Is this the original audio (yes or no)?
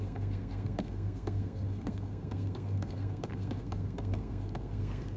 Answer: no